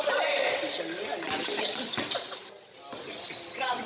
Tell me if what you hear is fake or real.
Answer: real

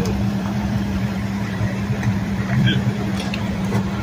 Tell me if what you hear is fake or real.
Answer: fake